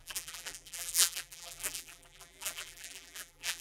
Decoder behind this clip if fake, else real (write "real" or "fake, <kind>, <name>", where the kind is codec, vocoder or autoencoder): fake, vocoder, BigVGAN v2